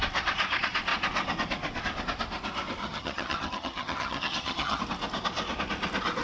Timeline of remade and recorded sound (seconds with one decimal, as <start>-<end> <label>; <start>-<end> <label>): 0.0-2.8 recorded; 2.8-4.8 remade; 4.8-6.2 recorded